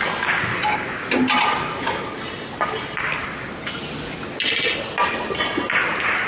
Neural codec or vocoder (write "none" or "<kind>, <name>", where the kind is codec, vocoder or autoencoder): none